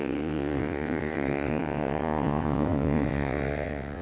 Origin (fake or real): fake